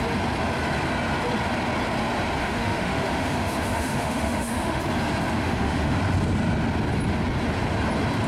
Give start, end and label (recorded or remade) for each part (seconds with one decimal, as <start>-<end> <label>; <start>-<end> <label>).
0.0-2.4 recorded; 2.4-4.8 remade; 4.8-5.4 recorded; 5.4-6.0 remade; 6.0-8.3 recorded